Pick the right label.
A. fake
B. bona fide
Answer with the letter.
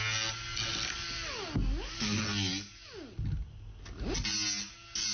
B